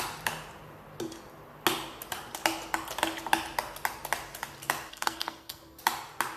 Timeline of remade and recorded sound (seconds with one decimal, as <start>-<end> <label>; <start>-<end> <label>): 0.0-4.9 recorded; 4.9-5.8 remade; 5.8-6.4 recorded